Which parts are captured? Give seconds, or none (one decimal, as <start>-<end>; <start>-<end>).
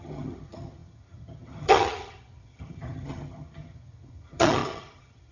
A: none